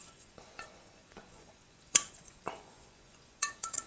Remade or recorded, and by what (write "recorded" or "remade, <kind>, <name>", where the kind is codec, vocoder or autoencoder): remade, vocoder, Vocos